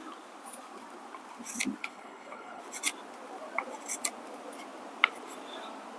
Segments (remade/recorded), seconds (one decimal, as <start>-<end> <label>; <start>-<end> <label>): 0.0-1.8 recorded; 1.8-2.6 remade; 2.6-6.0 recorded